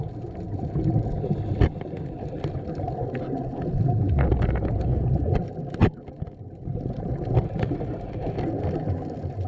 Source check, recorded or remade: recorded